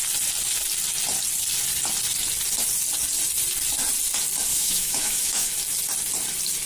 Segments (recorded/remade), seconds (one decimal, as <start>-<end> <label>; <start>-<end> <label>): 0.0-4.5 recorded; 4.5-5.5 remade; 5.5-6.7 recorded